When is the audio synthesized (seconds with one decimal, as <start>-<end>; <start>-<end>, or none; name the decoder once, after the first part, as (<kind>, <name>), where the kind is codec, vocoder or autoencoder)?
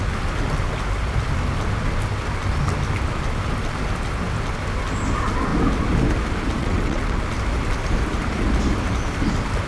6.6-7.2 (vocoder, WaveNeXt)